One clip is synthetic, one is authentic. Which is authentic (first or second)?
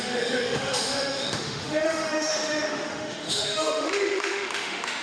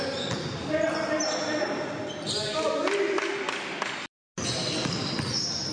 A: second